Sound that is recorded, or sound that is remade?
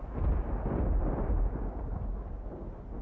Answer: recorded